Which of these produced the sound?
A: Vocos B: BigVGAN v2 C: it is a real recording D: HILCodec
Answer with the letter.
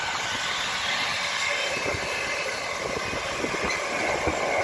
C